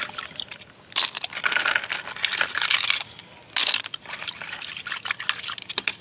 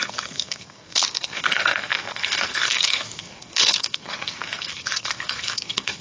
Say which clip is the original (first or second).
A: first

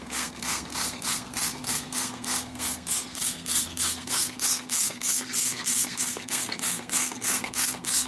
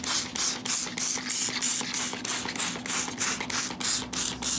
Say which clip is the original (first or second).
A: second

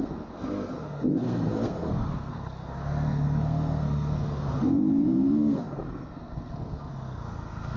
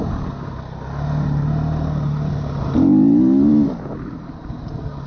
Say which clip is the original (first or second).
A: second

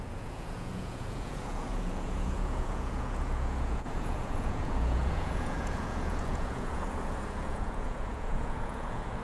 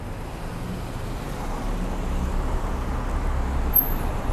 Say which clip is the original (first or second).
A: second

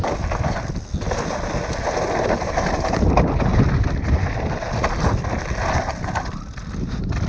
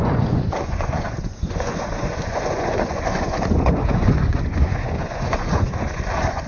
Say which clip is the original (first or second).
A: first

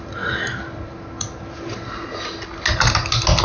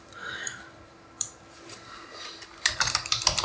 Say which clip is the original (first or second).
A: first